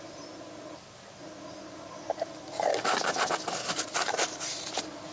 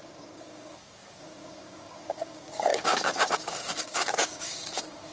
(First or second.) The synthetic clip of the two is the second